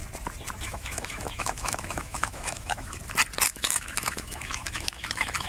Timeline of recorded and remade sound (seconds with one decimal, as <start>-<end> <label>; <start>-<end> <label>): 0.0-0.6 recorded; 0.6-3.0 remade; 3.0-3.5 recorded; 3.5-5.5 remade